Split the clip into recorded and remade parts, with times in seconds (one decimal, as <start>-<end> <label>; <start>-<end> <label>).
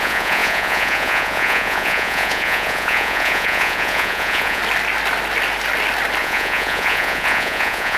0.0-4.6 remade; 4.6-6.2 recorded; 6.2-8.0 remade